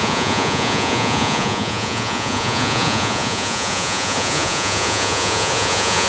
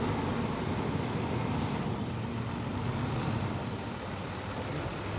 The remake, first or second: first